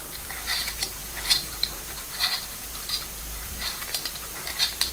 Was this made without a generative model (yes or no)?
no